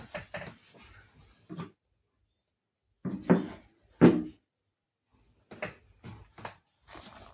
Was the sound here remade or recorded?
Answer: recorded